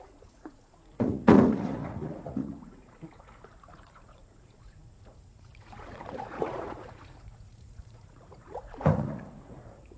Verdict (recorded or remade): remade